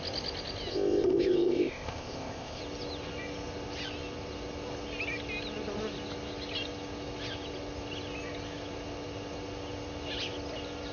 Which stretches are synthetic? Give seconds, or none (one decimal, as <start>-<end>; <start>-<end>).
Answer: 0.7-2.6